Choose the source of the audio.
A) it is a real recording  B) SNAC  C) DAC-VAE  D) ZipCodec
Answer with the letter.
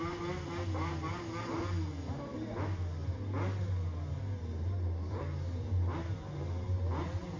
A